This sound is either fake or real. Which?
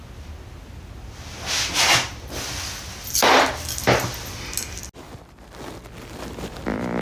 real